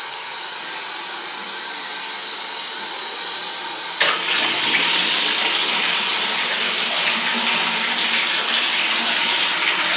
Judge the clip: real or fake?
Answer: real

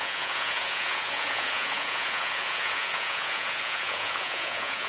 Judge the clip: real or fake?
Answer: fake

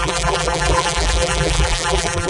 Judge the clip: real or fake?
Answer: fake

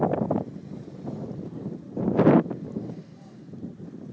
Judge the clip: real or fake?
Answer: real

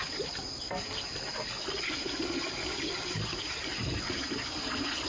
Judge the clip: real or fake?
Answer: real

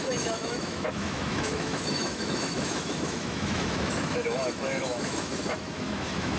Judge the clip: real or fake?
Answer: fake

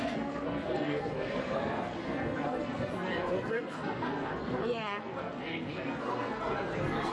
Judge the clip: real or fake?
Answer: fake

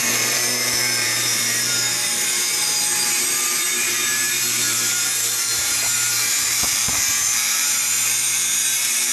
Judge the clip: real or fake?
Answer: fake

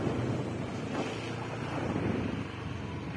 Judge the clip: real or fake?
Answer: real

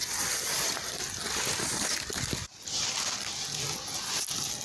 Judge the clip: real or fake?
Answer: real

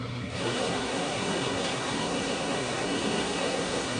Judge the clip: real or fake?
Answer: fake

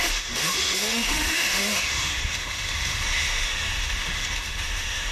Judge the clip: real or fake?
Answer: fake